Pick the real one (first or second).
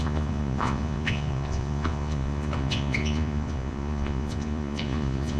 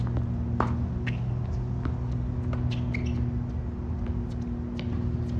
second